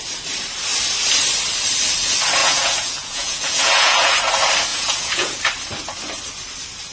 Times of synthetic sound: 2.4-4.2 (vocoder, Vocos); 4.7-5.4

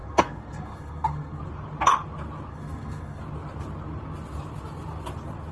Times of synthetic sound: 0.0-1.4 (codec, SNAC); 2.5-3.2

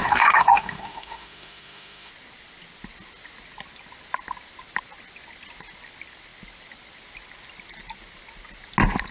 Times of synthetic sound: 0.0-2.1 (autoencoder, DAC-VAE)